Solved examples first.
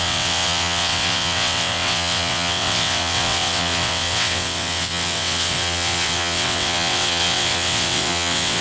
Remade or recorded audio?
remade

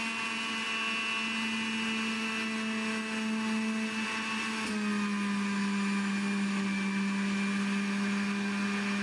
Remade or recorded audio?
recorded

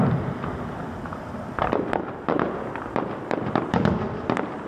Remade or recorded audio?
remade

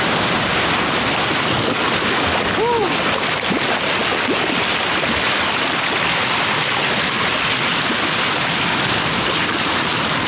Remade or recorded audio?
recorded